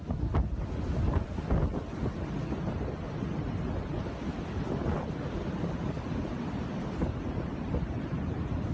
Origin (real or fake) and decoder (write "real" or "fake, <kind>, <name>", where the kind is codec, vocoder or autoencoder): real